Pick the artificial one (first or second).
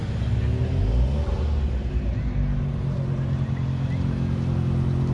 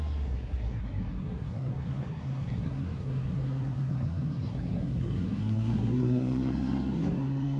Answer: second